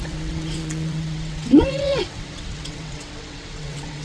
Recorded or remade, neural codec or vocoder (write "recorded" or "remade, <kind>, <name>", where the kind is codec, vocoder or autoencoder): remade, vocoder, WaveNeXt